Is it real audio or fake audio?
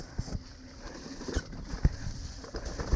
real